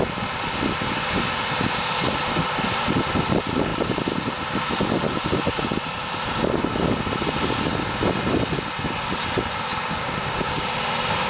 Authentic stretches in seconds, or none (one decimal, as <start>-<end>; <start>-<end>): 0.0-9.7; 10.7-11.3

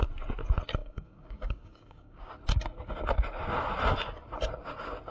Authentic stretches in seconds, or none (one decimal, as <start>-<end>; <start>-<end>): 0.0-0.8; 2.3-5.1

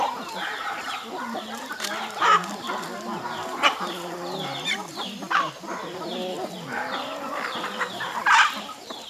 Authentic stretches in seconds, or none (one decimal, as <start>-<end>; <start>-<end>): 0.0-9.1